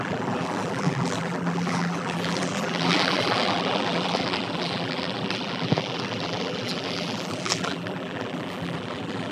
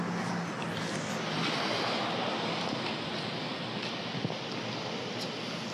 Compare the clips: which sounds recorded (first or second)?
second